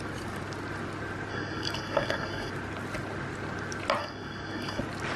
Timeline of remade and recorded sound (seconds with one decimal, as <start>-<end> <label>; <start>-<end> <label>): 0.0-1.3 recorded; 1.3-2.5 remade; 2.5-4.0 recorded; 4.0-4.8 remade; 4.8-5.2 recorded